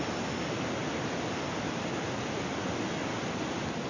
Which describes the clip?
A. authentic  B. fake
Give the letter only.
A